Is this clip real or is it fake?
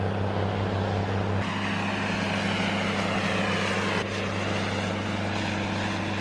real